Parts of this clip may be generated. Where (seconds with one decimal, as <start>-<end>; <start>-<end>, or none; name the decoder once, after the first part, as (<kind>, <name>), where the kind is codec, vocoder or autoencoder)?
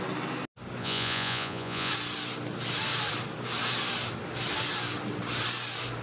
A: 0.8-1.9 (vocoder, Vocos)